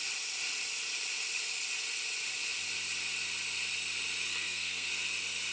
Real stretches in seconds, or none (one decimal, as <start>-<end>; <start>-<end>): 0.0-4.3; 4.9-5.5